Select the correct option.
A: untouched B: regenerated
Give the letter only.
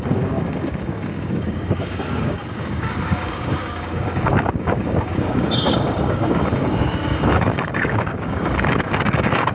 B